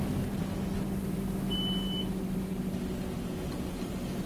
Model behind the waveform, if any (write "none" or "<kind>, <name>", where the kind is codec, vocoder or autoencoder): none